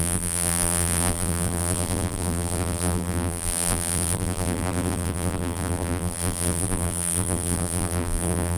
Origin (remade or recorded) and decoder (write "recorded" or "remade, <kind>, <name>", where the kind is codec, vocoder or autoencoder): remade, vocoder, BigVGAN v2